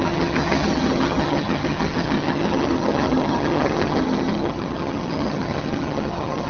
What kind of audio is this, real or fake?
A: fake